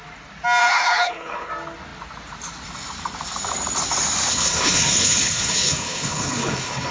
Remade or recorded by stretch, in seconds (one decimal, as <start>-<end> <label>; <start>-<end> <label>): 0.0-0.6 recorded; 0.6-1.5 remade; 1.5-4.3 recorded; 4.3-6.9 remade